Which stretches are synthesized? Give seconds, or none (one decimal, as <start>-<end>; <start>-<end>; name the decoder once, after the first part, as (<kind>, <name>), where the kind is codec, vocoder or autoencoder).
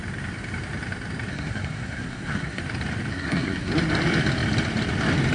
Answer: 1.3-2.6 (codec, SNAC); 3.1-3.7